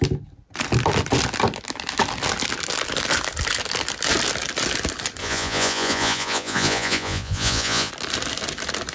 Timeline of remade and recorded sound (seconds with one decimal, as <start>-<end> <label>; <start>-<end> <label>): 0.0-5.2 recorded; 5.2-7.9 remade; 7.9-8.9 recorded